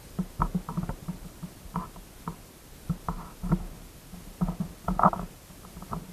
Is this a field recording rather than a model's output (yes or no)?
yes